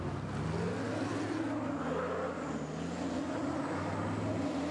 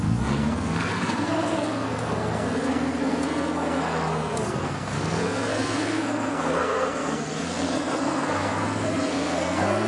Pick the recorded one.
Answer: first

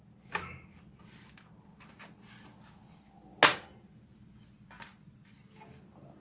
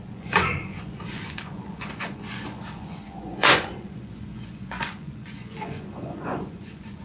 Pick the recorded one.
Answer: first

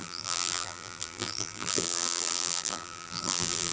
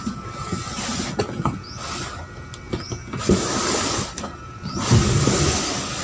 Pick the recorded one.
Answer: second